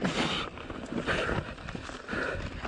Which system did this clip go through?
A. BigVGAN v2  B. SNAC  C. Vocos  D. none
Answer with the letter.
D